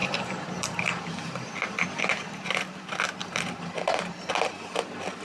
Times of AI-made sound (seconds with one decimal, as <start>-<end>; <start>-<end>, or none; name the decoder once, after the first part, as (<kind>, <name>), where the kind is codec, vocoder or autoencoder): 0.0-1.0 (vocoder, BigVGAN v2); 2.1-2.7; 3.2-4.3